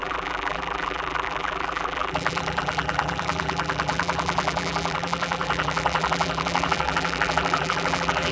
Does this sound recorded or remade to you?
remade